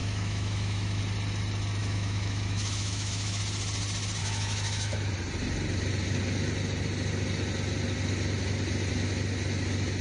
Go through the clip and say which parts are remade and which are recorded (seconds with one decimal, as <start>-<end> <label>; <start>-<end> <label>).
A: 0.0-1.0 remade; 1.0-1.8 recorded; 1.8-3.4 remade; 3.4-4.2 recorded; 4.2-5.1 remade; 5.1-10.0 recorded